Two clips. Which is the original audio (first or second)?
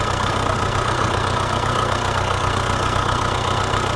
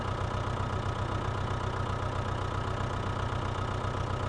second